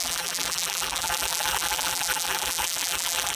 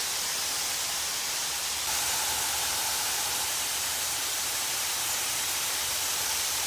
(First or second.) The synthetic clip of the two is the first